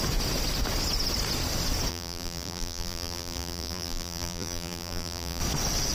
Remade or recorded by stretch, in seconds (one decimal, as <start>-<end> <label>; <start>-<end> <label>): 0.0-1.9 recorded; 1.9-5.4 remade; 5.4-5.9 recorded